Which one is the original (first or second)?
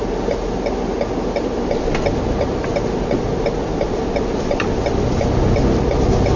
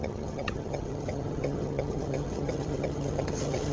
first